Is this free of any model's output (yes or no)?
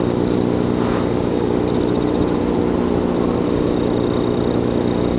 yes